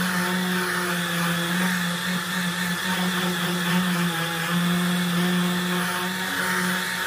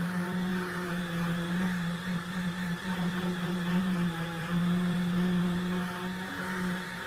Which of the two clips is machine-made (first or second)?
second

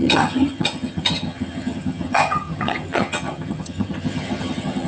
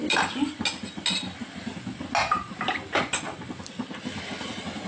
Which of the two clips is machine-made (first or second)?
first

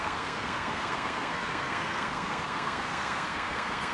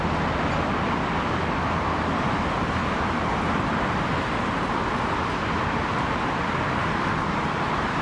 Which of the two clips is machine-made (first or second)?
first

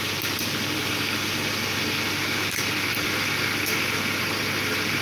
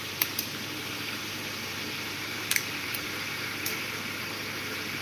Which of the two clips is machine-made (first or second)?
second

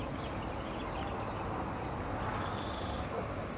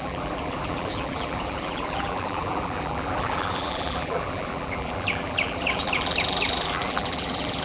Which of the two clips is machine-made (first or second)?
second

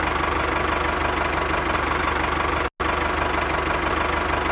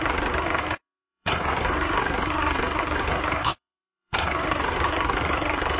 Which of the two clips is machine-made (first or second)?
second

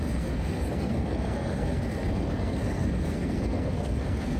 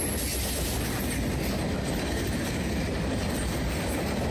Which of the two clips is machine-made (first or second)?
first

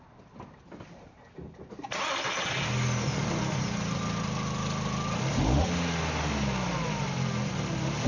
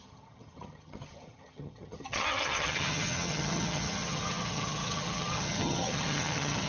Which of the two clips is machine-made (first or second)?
second